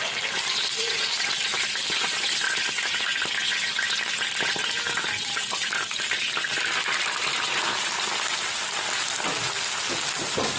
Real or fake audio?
real